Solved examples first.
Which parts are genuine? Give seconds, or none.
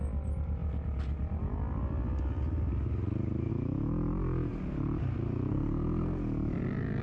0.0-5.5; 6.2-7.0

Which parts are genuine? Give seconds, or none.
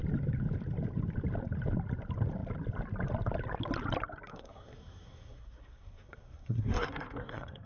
0.0-4.3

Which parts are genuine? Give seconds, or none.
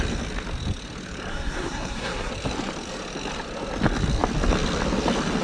0.0-1.3; 2.3-5.4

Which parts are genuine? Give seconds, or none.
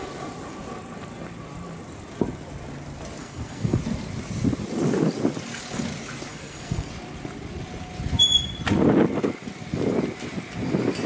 0.0-3.2; 3.8-6.3; 6.9-11.1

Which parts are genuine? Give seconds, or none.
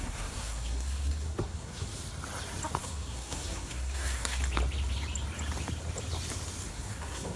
1.9-2.8; 4.4-6.7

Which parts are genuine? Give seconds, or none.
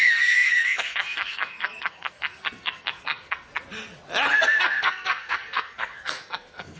3.5-4.3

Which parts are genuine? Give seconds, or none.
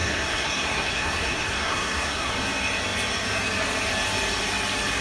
2.3-5.0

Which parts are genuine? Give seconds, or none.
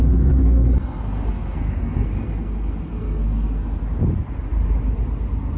0.0-0.4; 3.8-5.6